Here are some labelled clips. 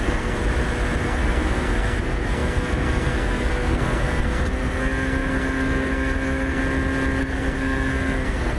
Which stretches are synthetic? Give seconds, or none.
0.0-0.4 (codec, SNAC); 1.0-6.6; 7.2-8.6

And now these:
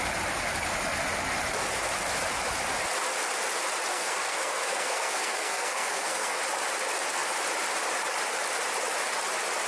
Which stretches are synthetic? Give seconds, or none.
3.9-6.4 (codec, SNAC)

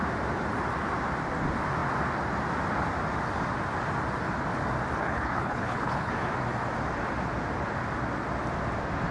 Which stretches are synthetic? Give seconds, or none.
5.0-6.1 (codec, HILCodec)

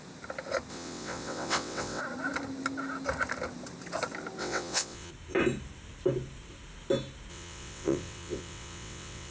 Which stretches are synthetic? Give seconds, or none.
0.7-2.0 (vocoder, WaveNeXt); 4.4-5.1; 7.3-9.3

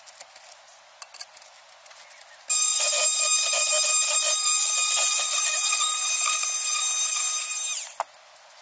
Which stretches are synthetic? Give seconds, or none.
none

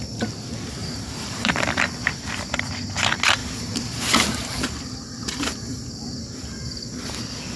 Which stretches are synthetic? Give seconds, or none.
0.8-1.7 (vocoder, BigVGAN v2); 3.4-7.1